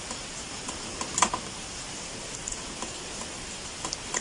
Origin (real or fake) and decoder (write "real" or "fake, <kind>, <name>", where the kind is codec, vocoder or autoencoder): real